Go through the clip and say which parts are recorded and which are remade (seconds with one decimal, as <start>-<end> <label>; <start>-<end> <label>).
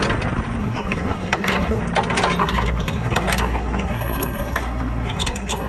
0.0-0.6 recorded; 0.6-1.8 remade; 1.8-2.4 recorded; 2.4-5.7 remade